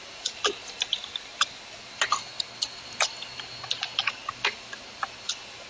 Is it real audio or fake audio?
real